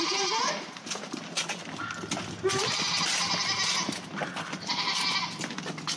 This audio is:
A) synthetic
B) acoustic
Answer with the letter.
B